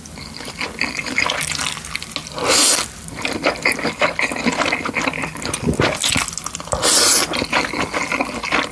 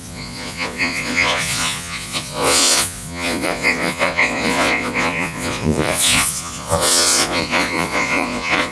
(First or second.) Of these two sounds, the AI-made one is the second